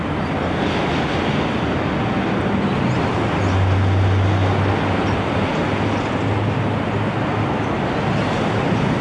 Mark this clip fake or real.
real